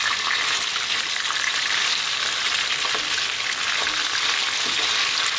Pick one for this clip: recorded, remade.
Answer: recorded